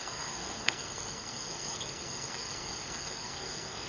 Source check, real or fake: fake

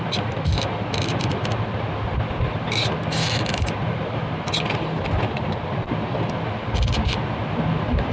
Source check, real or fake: real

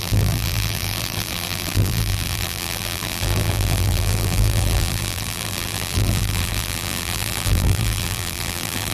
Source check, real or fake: fake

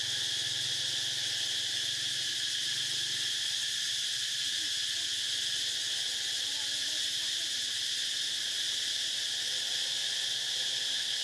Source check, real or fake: real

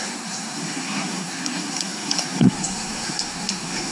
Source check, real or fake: fake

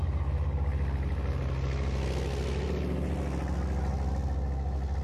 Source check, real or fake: real